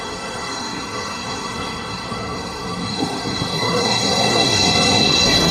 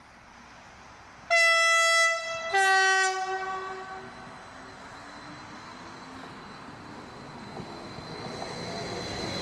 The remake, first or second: first